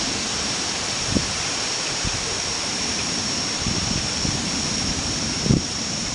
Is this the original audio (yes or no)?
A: no